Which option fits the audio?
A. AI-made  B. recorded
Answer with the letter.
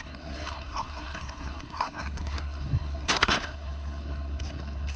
A